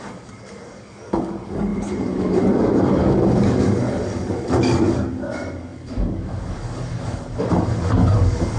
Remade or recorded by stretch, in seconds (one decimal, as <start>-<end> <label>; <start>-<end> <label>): 0.0-8.6 remade